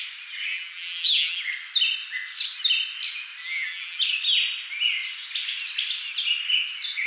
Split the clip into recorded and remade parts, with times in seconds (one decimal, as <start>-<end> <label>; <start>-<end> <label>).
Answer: 0.0-0.5 recorded; 0.5-1.4 remade; 1.4-3.4 recorded; 3.4-4.0 remade; 4.0-7.1 recorded